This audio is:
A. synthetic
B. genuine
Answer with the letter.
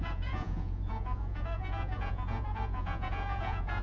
A